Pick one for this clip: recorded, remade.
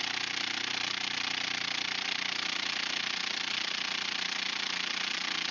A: recorded